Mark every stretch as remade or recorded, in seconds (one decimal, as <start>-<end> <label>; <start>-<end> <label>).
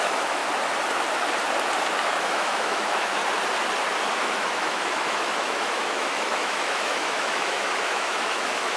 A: 0.0-0.4 remade; 0.4-2.0 recorded; 2.0-3.2 remade; 3.2-4.0 recorded; 4.0-8.8 remade